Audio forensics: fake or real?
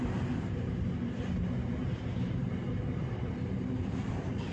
fake